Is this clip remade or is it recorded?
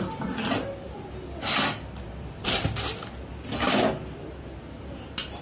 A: recorded